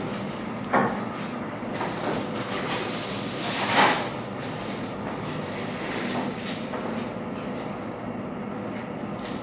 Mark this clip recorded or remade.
recorded